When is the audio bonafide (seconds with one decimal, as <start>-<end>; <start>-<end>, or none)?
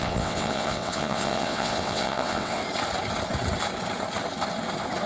2.6-5.1